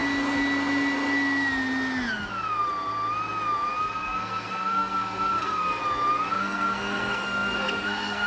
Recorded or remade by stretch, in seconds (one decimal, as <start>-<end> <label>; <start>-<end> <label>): 0.0-3.8 recorded; 3.8-5.8 remade; 5.8-6.3 recorded; 6.3-8.3 remade